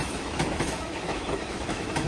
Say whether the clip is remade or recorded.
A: remade